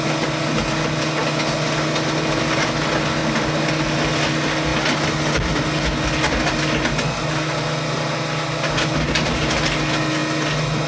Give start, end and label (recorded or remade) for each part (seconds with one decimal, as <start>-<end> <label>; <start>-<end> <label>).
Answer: 0.0-3.2 recorded; 3.2-3.7 remade; 3.7-10.9 recorded